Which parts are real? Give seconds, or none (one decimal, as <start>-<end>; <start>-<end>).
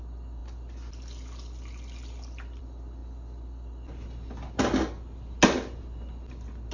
0.0-6.7